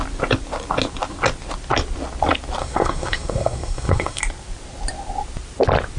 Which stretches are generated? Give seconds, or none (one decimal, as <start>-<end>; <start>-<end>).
2.6-4.2